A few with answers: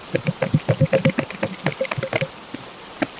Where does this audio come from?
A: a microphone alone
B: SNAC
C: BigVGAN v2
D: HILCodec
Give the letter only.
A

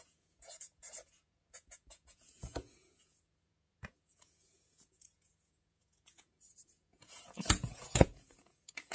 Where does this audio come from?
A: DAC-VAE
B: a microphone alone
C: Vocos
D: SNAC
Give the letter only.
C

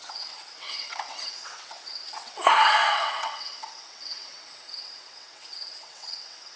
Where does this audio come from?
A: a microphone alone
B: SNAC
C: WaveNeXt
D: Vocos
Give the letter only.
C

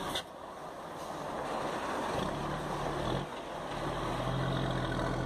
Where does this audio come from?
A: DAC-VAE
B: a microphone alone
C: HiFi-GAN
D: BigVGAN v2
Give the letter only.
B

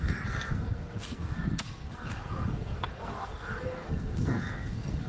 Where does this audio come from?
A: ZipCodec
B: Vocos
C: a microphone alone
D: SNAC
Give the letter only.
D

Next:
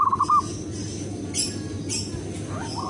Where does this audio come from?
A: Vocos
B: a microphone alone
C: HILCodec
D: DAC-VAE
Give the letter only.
B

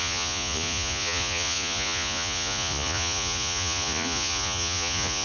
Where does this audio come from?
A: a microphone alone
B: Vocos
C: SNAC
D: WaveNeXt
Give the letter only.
B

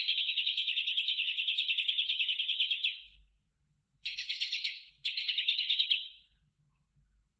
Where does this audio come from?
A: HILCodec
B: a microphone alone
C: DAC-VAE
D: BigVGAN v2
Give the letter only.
A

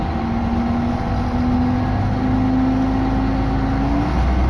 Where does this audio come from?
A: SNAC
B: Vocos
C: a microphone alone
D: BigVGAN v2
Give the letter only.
C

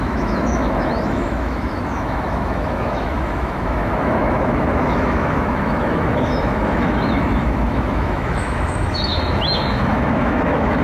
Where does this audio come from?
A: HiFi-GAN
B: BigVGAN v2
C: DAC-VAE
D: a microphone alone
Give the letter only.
C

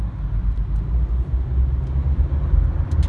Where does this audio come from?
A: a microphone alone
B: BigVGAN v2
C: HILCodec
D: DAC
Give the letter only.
A